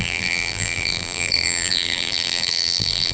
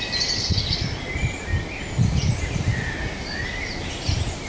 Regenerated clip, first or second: first